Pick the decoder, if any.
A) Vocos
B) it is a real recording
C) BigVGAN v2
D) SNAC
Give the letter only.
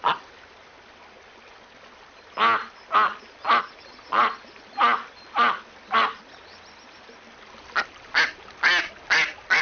B